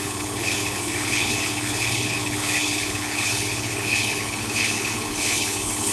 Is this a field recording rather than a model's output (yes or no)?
no